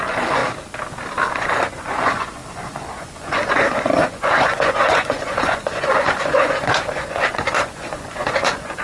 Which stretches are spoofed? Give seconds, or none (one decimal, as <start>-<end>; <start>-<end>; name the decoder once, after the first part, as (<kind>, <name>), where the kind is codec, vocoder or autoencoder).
0.0-0.4 (vocoder, Vocos); 1.3-8.8